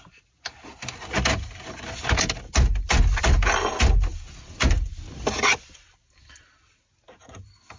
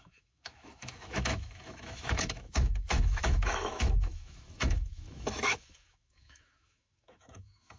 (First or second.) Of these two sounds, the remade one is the second